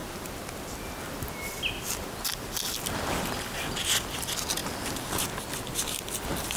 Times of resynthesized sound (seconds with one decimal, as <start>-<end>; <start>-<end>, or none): none

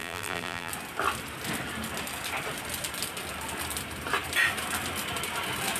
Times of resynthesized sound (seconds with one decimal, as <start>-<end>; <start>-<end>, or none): 0.0-0.7